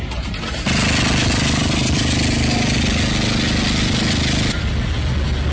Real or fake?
real